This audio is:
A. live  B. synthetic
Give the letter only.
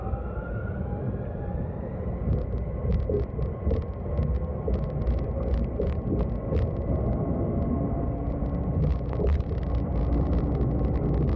A